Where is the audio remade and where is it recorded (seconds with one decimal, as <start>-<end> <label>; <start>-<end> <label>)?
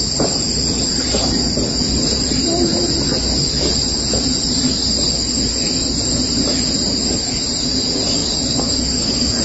0.0-9.4 recorded